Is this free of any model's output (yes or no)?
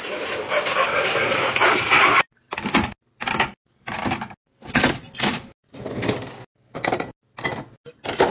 yes